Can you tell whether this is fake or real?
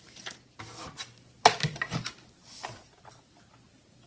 real